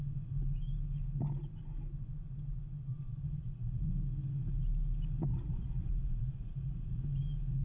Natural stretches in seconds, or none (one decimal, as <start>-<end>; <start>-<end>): 0.0-2.9; 3.9-5.3; 7.0-7.6